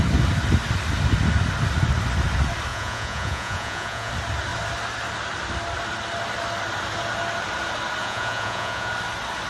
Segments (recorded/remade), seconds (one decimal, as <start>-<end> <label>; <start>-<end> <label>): 0.0-2.7 recorded; 2.7-4.1 remade; 4.1-8.0 recorded; 8.0-8.9 remade; 8.9-9.5 recorded